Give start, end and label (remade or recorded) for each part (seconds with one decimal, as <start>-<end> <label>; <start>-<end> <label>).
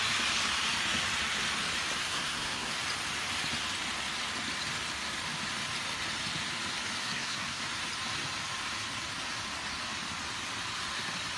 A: 0.0-2.0 recorded; 2.0-2.8 remade; 2.8-7.0 recorded; 7.0-7.6 remade; 7.6-11.4 recorded